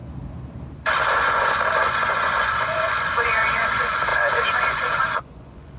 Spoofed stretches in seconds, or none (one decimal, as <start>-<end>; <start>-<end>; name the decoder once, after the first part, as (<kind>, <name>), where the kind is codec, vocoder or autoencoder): 1.1-5.8 (vocoder, Vocos)